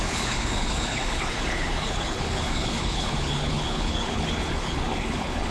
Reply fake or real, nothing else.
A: fake